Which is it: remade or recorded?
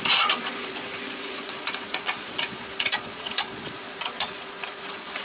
remade